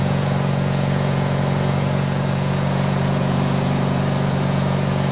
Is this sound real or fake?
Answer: fake